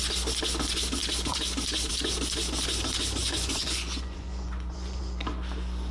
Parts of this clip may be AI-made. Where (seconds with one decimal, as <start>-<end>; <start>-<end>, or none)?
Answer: 3.2-5.0